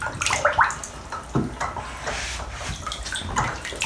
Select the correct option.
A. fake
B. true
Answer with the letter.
B